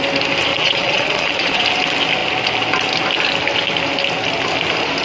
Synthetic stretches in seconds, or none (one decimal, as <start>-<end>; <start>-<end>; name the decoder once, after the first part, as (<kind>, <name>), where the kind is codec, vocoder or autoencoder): 0.5-1.6 (vocoder, Vocos)